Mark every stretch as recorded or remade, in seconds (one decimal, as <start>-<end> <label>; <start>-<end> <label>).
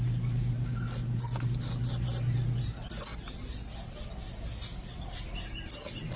0.0-6.2 recorded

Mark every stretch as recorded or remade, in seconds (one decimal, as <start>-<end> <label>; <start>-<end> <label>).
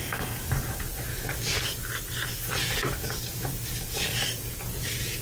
0.0-1.1 recorded; 1.1-1.8 remade; 1.8-2.6 recorded; 2.6-4.6 remade; 4.6-5.2 recorded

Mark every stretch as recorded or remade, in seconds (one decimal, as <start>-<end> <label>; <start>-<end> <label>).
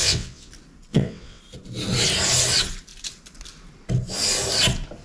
0.0-0.5 remade; 0.5-0.9 recorded; 0.9-1.4 remade; 1.4-5.0 recorded